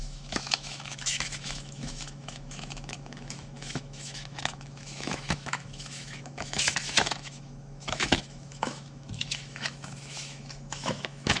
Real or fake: fake